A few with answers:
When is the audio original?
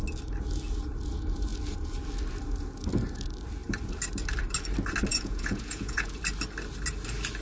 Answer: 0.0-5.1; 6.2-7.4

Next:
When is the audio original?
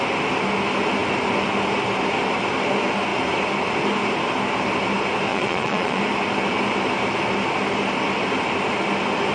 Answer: 0.0-5.3; 6.0-9.3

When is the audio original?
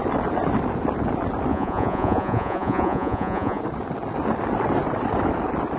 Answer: 0.0-1.5; 3.6-5.8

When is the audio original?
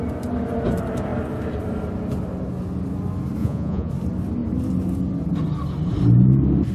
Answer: 0.0-3.4; 3.9-6.7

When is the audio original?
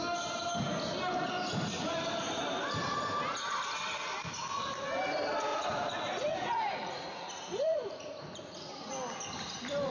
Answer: 0.0-5.5; 8.9-9.9